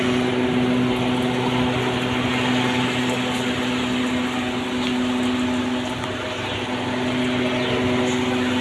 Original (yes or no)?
yes